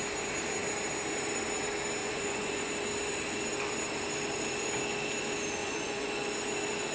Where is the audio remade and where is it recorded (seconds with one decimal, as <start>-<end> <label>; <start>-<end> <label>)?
0.0-2.0 recorded; 2.0-2.7 remade; 2.7-5.6 recorded; 5.6-6.3 remade; 6.3-6.9 recorded